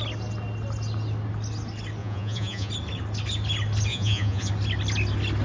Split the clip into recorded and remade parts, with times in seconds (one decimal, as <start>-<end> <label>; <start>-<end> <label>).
0.0-2.0 recorded; 2.0-2.7 remade; 2.7-3.9 recorded; 3.9-4.5 remade; 4.5-5.4 recorded